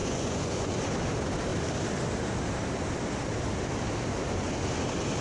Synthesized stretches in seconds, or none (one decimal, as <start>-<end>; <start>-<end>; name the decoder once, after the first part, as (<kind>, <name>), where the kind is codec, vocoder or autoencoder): 0.0-0.7 (vocoder, Vocos)